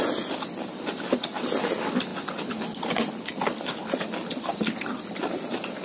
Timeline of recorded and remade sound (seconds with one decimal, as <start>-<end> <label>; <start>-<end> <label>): 0.0-5.8 recorded